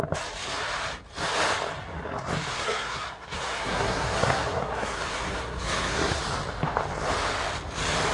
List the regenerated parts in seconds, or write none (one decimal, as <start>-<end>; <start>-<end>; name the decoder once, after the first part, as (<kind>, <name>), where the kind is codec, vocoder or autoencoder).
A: 2.5-6.2 (codec, SNAC)